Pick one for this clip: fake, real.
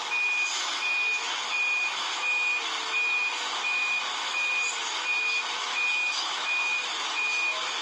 fake